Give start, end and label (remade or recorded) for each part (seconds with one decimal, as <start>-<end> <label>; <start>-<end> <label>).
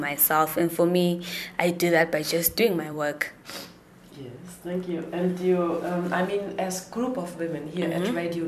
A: 0.0-0.5 remade; 0.5-2.6 recorded; 2.6-4.1 remade; 4.1-8.5 recorded